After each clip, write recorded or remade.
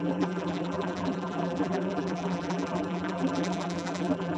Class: remade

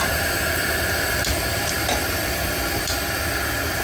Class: recorded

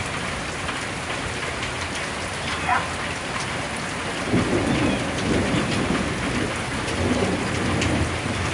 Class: recorded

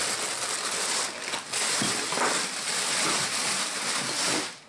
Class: recorded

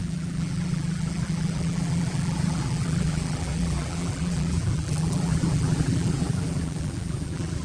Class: remade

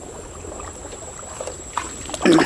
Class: recorded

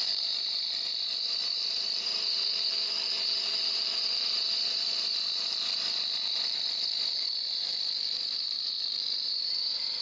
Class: remade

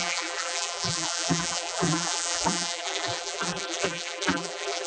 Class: remade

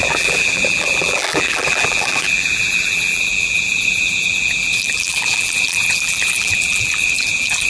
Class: remade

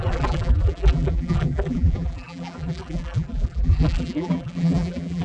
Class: remade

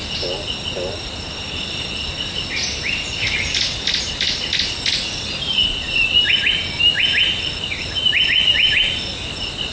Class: recorded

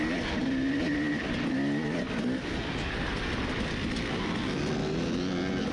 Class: recorded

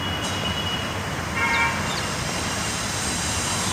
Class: recorded